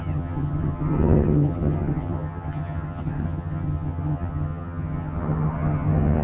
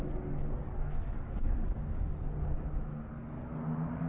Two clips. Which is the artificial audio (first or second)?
first